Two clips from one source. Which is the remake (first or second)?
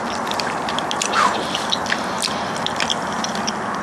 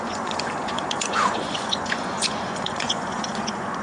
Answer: second